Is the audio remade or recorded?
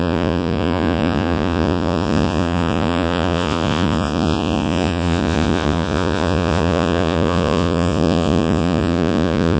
remade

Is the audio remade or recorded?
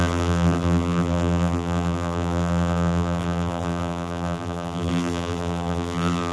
remade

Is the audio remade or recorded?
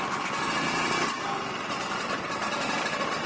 recorded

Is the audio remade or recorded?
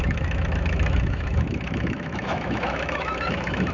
remade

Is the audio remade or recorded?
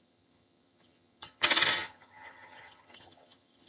remade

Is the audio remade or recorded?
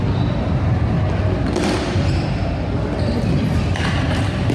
recorded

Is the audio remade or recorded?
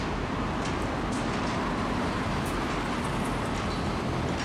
recorded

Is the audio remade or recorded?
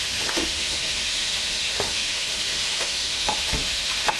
remade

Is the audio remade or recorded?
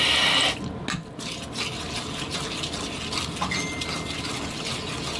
recorded